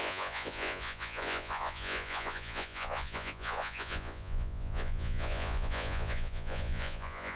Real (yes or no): no